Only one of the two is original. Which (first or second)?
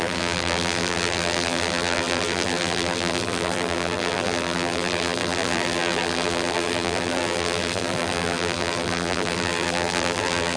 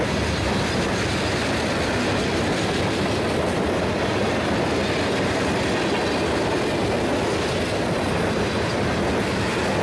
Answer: second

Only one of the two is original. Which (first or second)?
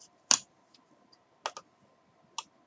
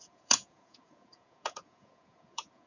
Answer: first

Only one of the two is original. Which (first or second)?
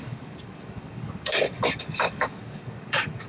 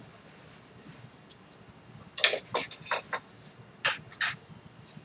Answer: second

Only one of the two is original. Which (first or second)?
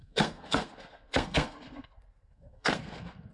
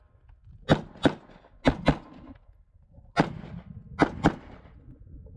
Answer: second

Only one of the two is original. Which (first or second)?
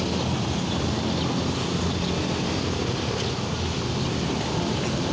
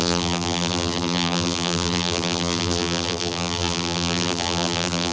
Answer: first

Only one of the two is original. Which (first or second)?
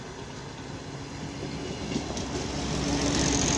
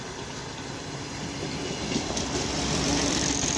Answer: first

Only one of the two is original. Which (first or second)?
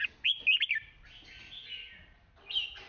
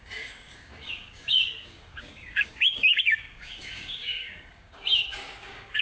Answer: first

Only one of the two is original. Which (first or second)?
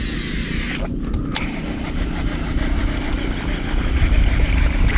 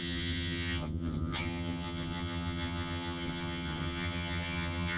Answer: first